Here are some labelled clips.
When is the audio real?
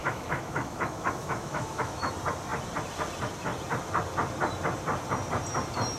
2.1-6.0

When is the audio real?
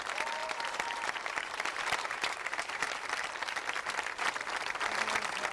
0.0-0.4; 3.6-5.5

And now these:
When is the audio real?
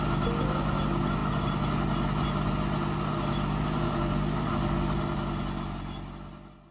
0.0-6.7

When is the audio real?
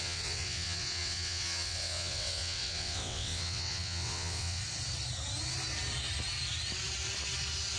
4.6-7.8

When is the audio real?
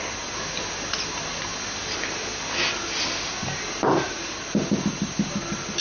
0.0-5.8